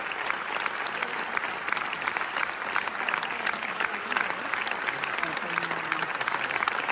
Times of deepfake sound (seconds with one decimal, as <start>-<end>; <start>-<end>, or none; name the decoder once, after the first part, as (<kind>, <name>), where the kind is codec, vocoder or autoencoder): none